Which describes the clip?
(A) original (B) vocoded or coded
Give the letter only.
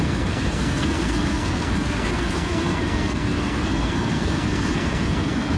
B